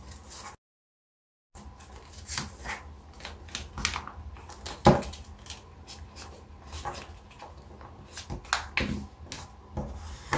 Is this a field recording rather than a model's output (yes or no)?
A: yes